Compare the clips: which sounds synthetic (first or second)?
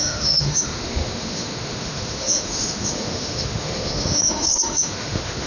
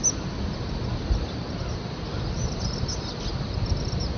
first